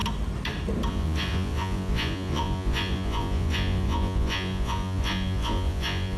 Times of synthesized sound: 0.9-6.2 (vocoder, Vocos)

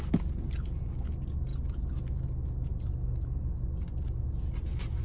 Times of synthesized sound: none

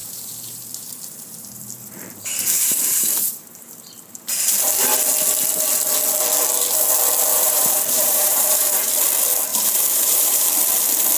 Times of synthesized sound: 0.0-4.7 (vocoder, BigVGAN v2); 7.3-8.9; 9.5-10.6